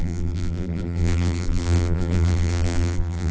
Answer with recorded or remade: remade